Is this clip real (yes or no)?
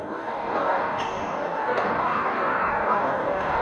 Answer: no